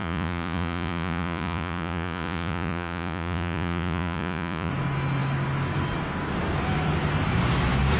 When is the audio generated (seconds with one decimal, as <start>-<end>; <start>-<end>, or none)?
0.0-4.7